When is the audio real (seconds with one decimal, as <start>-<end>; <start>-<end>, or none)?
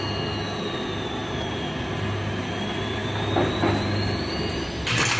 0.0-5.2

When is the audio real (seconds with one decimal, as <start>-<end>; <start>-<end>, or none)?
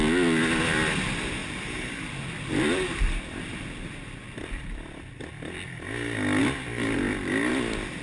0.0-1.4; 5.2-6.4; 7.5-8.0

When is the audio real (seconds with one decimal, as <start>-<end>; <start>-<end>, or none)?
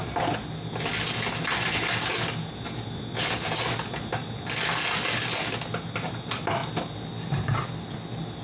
0.0-8.4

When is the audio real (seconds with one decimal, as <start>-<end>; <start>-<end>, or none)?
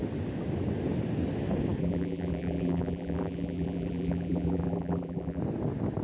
0.0-1.8; 5.4-6.0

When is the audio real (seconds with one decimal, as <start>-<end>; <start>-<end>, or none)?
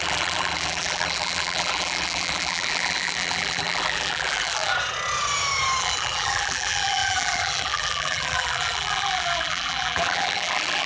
4.7-5.8